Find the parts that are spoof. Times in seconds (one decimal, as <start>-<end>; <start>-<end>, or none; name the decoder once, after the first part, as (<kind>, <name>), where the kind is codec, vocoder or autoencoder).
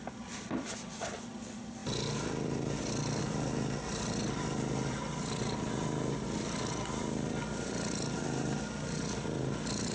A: none